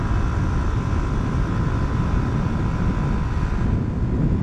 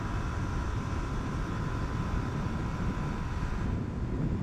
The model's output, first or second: second